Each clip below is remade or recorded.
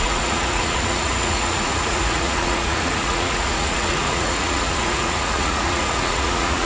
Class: remade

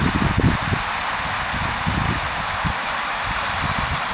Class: recorded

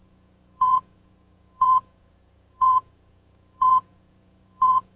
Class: remade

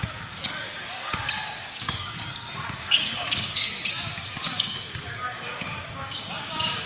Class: remade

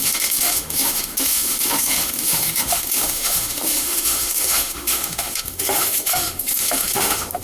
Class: remade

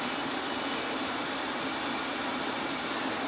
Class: recorded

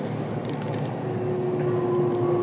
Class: recorded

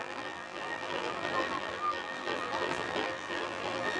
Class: remade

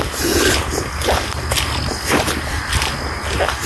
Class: recorded